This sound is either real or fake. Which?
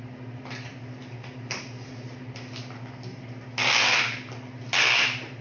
real